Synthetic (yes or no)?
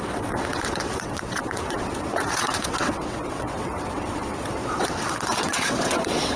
yes